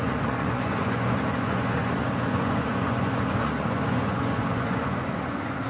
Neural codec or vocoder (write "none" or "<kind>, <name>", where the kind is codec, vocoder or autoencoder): vocoder, Vocos